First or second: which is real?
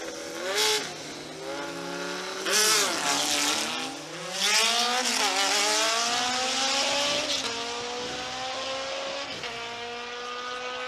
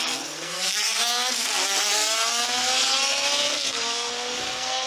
first